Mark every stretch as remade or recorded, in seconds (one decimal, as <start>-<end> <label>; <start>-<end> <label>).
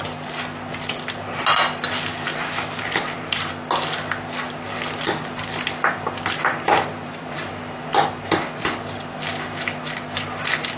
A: 0.0-2.1 recorded; 2.1-3.5 remade; 3.5-6.5 recorded; 6.5-7.5 remade; 7.5-10.8 recorded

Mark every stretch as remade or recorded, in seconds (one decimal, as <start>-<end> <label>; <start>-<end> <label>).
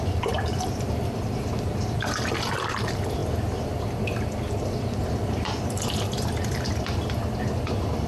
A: 0.0-8.1 remade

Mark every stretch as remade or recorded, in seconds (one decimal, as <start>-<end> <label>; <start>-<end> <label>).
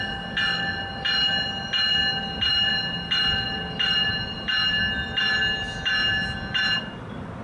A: 0.0-7.4 recorded